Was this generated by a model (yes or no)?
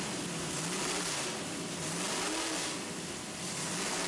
no